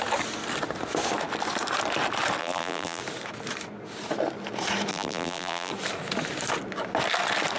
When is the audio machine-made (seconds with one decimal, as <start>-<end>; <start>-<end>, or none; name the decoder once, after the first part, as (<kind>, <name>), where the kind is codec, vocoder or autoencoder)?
2.4-3.0 (vocoder, BigVGAN v2); 4.9-5.7